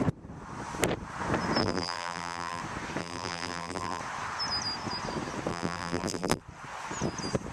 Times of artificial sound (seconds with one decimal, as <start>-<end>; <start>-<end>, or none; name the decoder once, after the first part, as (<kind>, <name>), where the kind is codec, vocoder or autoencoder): 1.6-2.6 (vocoder, BigVGAN v2); 3.0-4.0; 5.5-6.4